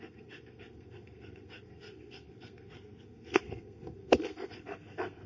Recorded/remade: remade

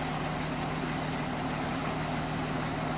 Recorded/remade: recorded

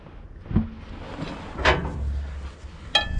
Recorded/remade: recorded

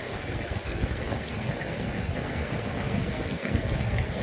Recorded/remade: remade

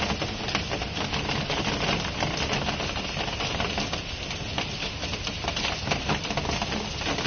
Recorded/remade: recorded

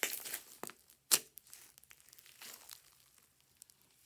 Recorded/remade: recorded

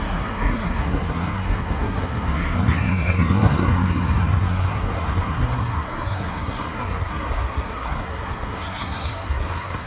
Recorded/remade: remade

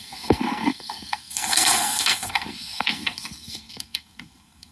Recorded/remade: remade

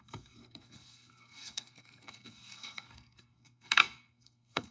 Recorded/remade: remade